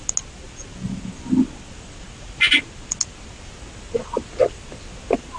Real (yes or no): yes